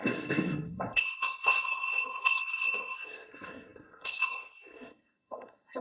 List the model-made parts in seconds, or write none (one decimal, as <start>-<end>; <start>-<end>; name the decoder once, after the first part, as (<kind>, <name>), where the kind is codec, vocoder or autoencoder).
0.0-5.8 (codec, SNAC)

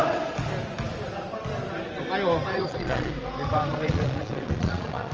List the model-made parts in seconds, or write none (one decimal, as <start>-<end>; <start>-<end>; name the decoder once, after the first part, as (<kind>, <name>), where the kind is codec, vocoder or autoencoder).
2.5-3.1 (vocoder, Vocos); 3.7-5.1

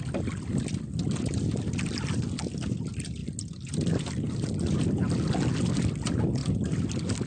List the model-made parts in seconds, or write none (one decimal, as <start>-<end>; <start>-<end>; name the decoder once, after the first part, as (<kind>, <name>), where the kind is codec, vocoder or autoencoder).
none

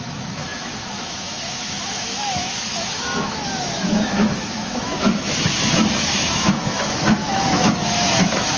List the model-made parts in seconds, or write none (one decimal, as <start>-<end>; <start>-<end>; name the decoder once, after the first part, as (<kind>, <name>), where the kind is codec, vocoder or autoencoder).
0.0-8.6 (autoencoder, DAC-VAE)

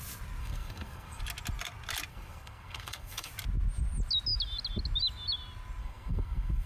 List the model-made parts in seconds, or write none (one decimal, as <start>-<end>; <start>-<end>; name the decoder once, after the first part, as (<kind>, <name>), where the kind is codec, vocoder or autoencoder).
0.4-1.2 (codec, SNAC); 2.1-3.3; 5.8-6.7

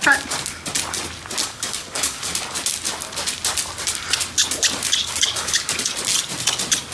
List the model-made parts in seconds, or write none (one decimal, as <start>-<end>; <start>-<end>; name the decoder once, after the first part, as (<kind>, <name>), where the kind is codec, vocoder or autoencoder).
1.4-2.2 (codec, DAC); 5.0-5.7

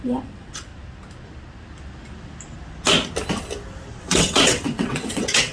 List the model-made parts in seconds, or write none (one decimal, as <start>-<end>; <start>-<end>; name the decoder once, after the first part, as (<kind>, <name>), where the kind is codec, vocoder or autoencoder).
0.0-0.7 (vocoder, WaveNeXt); 4.0-5.5